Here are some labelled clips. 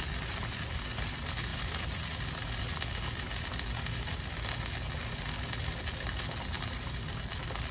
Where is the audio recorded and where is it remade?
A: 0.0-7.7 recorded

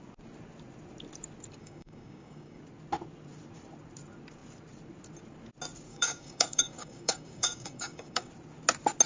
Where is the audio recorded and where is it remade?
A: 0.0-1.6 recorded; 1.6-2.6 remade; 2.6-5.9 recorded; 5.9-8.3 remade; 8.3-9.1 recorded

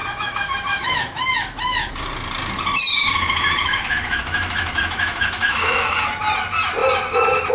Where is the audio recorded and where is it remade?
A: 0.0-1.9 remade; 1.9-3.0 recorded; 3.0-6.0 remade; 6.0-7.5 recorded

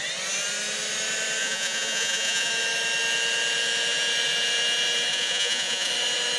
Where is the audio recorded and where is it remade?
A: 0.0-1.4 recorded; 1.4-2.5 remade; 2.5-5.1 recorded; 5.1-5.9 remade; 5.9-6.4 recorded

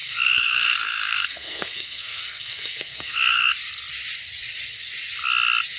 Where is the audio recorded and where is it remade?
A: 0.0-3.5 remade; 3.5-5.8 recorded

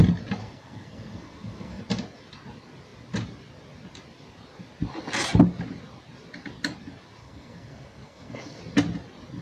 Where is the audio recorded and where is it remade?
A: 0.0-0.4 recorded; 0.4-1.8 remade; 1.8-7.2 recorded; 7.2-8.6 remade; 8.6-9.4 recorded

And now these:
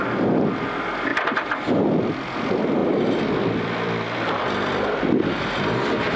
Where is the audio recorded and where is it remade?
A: 0.0-1.1 recorded; 1.1-1.8 remade; 1.8-2.8 recorded; 2.8-5.1 remade; 5.1-6.2 recorded